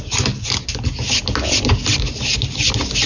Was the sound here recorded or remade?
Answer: recorded